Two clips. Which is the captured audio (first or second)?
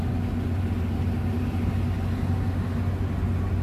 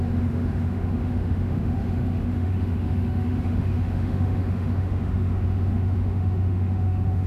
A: first